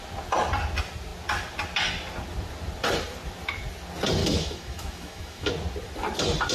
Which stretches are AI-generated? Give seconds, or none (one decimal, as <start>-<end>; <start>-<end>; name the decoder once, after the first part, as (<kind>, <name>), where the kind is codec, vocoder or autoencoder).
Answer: 4.2-5.5 (autoencoder, DAC-VAE)